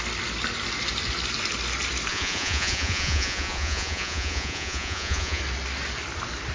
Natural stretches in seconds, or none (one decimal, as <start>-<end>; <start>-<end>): 0.0-2.1; 5.4-6.5